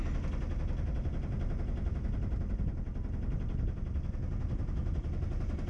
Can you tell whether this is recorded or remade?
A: recorded